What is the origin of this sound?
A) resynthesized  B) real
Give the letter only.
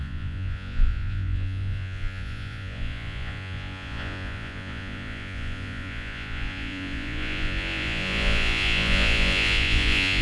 A